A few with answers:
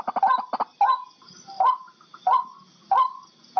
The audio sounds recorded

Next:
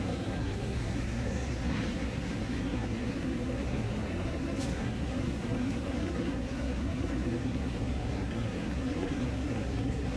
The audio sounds remade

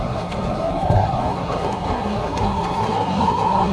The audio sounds remade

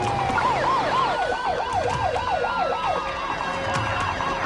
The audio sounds recorded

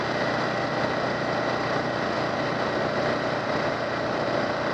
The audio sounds recorded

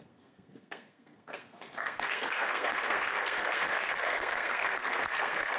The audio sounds remade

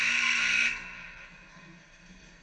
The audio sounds remade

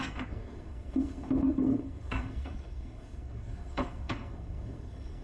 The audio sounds remade